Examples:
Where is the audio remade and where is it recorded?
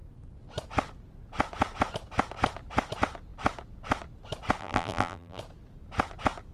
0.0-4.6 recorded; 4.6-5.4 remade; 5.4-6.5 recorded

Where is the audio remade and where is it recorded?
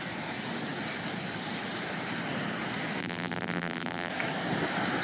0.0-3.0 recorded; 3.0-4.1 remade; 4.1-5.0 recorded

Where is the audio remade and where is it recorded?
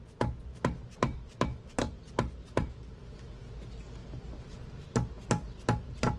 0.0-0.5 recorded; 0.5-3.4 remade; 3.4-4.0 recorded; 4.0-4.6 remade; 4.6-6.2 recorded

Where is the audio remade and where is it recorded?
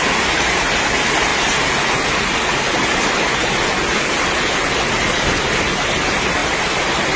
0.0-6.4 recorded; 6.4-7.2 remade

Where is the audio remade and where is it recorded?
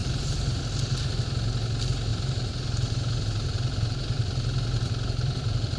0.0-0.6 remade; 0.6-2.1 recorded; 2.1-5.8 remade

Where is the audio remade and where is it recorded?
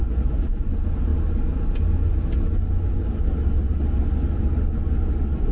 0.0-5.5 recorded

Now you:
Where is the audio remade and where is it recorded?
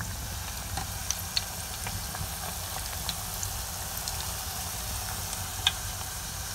0.0-5.5 recorded; 5.5-6.5 remade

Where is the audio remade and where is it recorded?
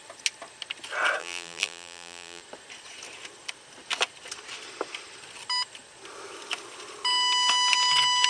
0.0-1.2 recorded; 1.2-2.4 remade; 2.4-8.3 recorded